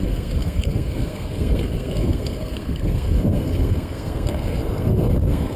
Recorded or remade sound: remade